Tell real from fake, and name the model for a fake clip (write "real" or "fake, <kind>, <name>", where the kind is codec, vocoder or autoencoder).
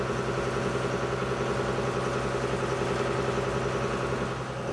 real